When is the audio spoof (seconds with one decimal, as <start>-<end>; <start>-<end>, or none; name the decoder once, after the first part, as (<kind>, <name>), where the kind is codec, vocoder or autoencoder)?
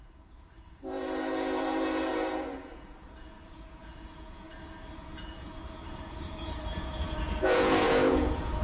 0.0-8.6 (vocoder, Vocos)